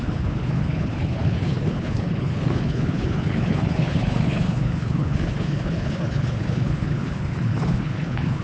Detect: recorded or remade remade